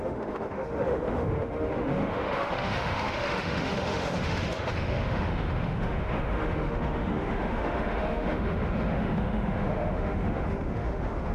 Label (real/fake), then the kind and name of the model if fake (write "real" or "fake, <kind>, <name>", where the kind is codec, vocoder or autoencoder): fake, autoencoder, DAC-VAE